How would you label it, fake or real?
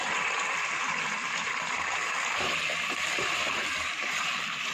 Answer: fake